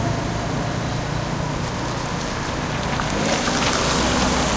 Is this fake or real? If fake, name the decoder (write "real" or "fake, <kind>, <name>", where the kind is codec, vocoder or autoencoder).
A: real